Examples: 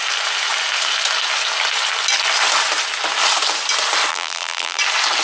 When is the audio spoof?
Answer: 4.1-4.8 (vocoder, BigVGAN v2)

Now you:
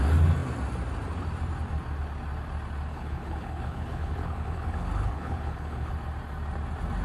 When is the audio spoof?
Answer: 2.9-5.9 (codec, HILCodec)

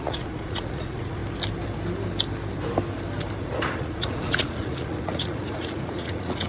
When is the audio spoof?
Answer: 0.0-1.2 (vocoder, Vocos); 3.4-6.5

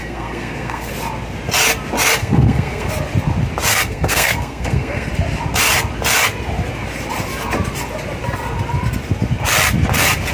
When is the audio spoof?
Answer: 0.0-0.9 (codec, SNAC); 2.2-2.9; 3.7-5.1